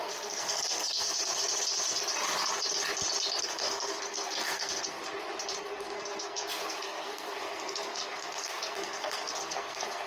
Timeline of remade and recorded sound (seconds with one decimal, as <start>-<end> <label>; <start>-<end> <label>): 0.0-1.3 remade; 1.3-3.4 recorded; 3.4-5.0 remade; 5.0-5.6 recorded; 5.6-10.1 remade